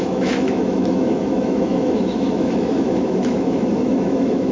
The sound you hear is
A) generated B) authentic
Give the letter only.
A